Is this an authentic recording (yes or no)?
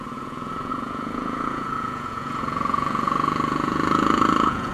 no